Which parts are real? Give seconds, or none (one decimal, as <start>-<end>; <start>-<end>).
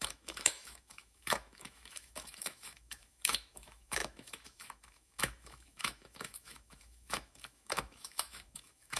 none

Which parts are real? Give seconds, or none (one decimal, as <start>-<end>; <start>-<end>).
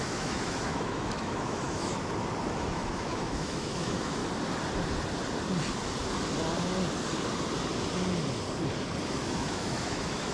1.9-2.6; 4.2-9.0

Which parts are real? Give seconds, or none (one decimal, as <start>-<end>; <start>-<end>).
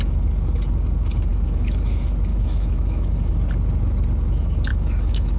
0.0-1.3; 1.8-2.3; 3.3-4.7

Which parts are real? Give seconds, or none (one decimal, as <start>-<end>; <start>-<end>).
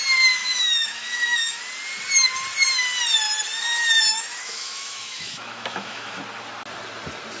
0.0-0.4; 1.6-4.1; 6.2-7.4